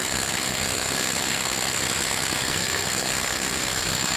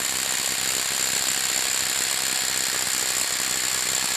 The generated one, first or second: first